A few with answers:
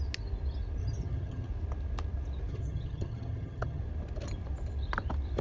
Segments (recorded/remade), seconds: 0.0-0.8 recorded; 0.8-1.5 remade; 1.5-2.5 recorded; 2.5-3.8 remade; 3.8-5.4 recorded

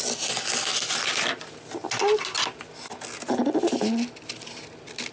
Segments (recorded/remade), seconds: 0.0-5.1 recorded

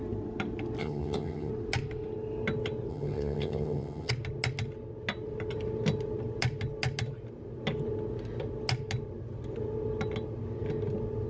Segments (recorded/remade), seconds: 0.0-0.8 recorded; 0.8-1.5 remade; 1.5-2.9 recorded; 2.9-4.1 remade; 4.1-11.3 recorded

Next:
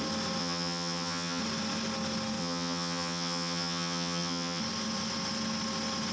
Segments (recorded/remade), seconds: 0.0-0.4 recorded; 0.4-1.4 remade; 1.4-2.4 recorded; 2.4-4.6 remade; 4.6-6.1 recorded

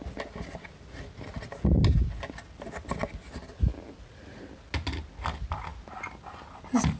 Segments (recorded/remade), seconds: 0.0-7.0 recorded

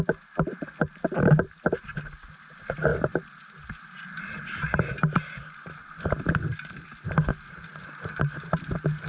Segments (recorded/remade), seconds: 0.0-9.1 recorded